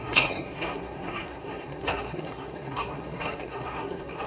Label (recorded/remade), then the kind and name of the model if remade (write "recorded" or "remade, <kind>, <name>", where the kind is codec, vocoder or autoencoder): remade, codec, SNAC